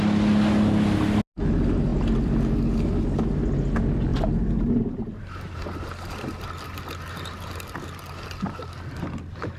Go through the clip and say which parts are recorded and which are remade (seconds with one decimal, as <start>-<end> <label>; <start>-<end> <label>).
0.0-4.1 recorded; 4.1-5.6 remade; 5.6-9.6 recorded